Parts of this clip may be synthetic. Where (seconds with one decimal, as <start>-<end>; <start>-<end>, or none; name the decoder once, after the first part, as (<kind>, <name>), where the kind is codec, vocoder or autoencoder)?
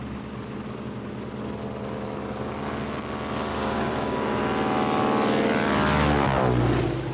3.5-4.4 (codec, DAC)